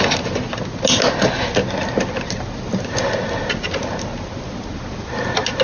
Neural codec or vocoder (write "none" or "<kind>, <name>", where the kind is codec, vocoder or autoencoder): none